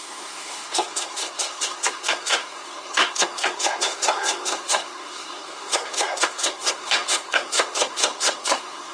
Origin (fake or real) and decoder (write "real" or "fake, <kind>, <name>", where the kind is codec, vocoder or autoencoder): fake, codec, SNAC